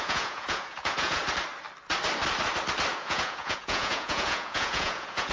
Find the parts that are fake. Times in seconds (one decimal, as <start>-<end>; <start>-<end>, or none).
0.0-1.2; 2.9-5.3